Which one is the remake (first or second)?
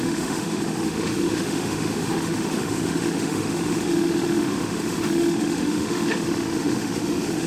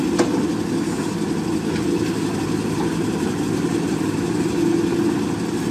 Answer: first